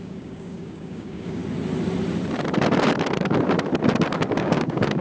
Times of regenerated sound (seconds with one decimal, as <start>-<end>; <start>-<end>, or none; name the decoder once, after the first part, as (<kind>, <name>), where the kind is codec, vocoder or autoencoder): 0.0-1.4 (codec, DAC); 4.4-5.0